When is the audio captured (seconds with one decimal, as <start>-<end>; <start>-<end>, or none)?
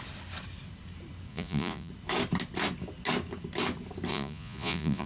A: 0.0-1.3; 1.9-4.1